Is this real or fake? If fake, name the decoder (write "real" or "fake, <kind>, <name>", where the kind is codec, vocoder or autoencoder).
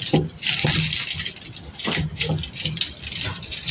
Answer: real